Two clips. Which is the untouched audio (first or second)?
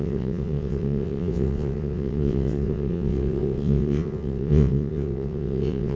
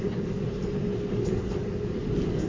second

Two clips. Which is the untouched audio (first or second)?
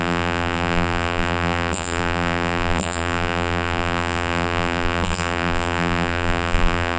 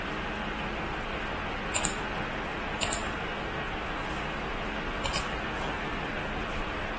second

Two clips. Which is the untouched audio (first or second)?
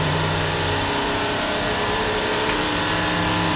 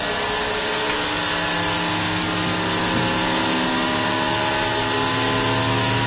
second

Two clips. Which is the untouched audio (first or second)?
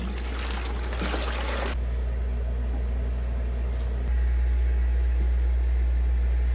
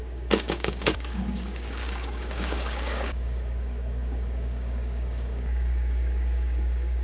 first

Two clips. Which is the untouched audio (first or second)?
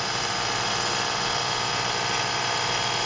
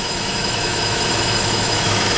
first